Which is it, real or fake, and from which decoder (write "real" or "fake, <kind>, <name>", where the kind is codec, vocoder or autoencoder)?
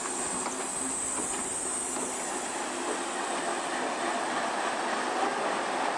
real